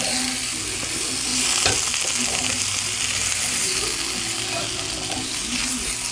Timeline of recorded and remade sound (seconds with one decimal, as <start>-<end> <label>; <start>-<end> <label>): 0.0-6.1 recorded